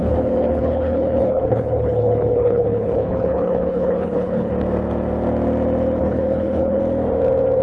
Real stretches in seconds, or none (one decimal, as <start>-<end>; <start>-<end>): 4.5-6.0; 6.8-7.6